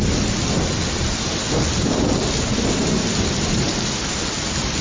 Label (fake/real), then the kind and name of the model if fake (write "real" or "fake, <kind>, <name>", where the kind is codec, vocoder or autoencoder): real